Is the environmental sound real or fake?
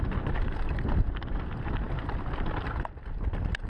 fake